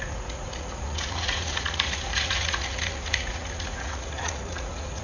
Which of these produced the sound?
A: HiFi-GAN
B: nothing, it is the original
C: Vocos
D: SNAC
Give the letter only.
C